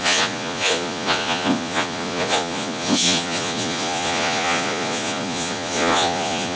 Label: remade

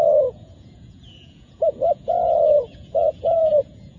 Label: remade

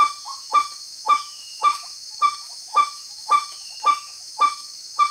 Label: remade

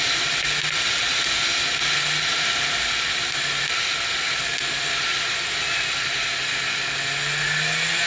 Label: recorded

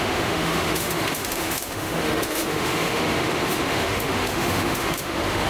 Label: remade